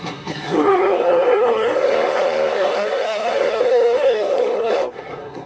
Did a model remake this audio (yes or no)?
yes